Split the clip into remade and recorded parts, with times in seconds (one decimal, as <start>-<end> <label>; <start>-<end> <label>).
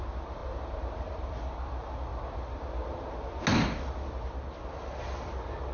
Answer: 0.0-5.7 recorded